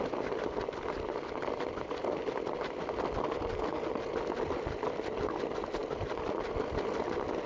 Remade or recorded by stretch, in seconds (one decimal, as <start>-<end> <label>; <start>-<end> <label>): 0.0-7.5 recorded